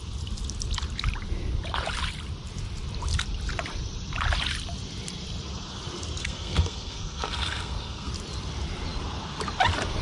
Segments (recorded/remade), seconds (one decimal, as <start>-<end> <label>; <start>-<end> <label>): 0.0-6.2 recorded; 6.2-8.1 remade; 8.1-10.0 recorded